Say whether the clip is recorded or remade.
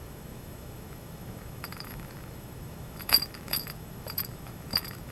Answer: remade